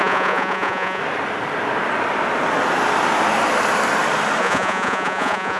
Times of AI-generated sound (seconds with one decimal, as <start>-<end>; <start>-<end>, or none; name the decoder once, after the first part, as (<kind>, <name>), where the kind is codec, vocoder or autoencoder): 0.0-1.0 (vocoder, Vocos); 4.4-5.6